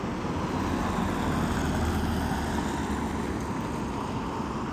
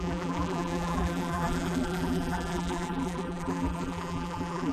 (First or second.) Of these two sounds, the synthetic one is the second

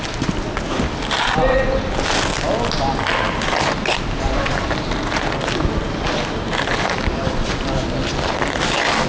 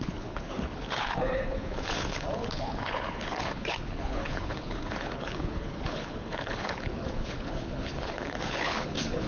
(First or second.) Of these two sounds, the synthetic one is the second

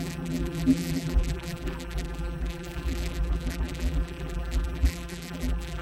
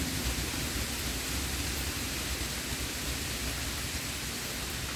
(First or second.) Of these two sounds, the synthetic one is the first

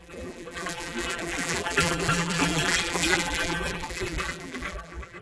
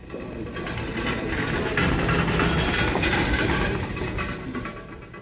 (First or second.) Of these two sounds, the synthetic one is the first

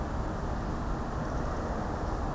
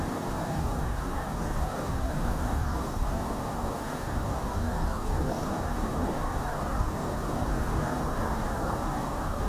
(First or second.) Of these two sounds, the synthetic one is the second